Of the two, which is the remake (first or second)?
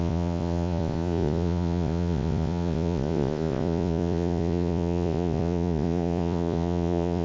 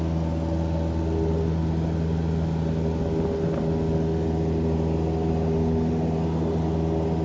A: first